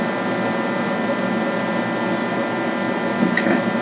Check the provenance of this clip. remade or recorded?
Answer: recorded